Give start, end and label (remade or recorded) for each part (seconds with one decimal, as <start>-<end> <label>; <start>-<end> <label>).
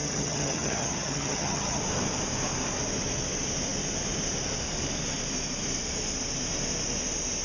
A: 0.0-1.8 remade; 1.8-7.4 recorded